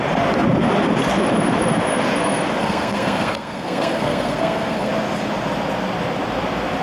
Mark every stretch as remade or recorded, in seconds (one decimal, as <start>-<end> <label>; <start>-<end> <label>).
0.0-2.6 recorded; 2.6-4.9 remade; 4.9-6.8 recorded